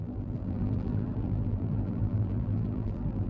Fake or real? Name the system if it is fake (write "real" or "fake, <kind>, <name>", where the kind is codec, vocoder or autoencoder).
fake, vocoder, BigVGAN v2